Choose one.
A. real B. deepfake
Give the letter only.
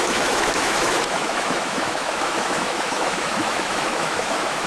B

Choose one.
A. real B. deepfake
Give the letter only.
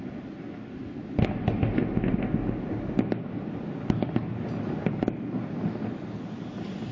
A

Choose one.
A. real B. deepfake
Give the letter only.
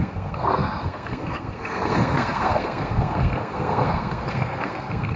B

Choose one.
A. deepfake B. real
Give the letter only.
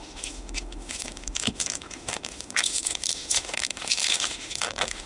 A